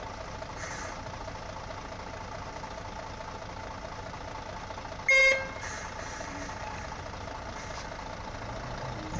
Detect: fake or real real